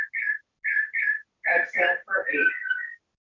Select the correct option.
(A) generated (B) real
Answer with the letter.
B